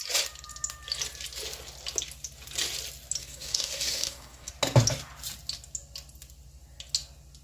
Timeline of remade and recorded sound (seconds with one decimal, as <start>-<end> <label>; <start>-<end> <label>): 0.0-3.2 recorded; 3.2-4.5 remade; 4.5-7.4 recorded